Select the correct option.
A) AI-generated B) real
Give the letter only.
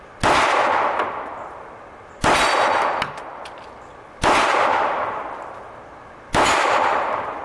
B